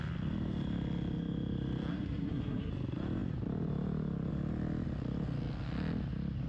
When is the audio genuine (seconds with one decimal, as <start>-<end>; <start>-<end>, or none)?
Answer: 0.0-1.9; 2.7-6.5